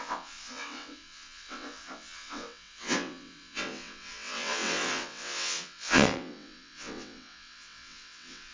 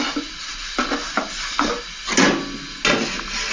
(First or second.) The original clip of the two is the second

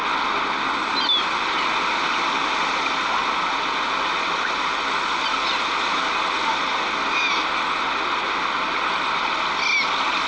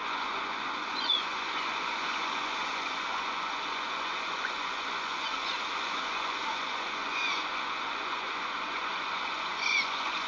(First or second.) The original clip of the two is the first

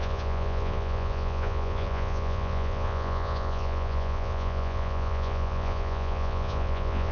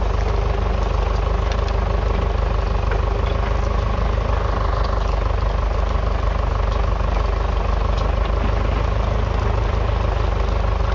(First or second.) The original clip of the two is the second